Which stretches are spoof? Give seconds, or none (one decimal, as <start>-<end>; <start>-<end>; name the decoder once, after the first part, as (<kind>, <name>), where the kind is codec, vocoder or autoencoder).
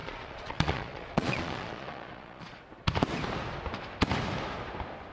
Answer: 0.0-2.6 (vocoder, Vocos)